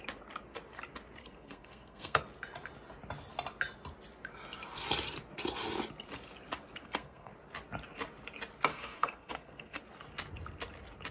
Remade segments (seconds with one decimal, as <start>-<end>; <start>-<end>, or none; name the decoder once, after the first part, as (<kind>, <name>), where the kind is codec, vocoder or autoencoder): 1.2-2.2 (codec, SNAC); 6.8-7.3; 8.7-9.8